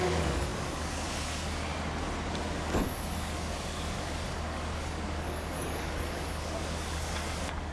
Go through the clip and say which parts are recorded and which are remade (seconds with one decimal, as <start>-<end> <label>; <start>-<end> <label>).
0.0-1.7 remade; 1.7-2.3 recorded; 2.3-7.7 remade